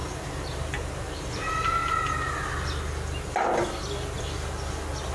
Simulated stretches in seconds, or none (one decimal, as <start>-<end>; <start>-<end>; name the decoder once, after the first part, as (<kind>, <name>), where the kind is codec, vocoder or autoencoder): 0.0-1.4 (vocoder, BigVGAN v2)